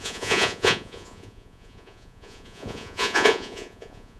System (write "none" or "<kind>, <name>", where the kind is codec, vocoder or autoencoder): vocoder, Vocos